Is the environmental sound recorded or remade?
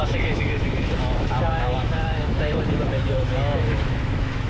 remade